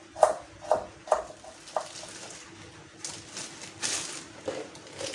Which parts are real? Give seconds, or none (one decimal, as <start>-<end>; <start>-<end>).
0.0-5.1